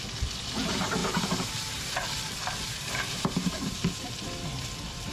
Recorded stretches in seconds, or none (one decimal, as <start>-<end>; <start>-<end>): 0.0-1.0; 4.1-5.1